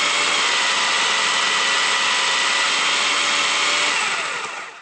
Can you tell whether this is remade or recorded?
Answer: recorded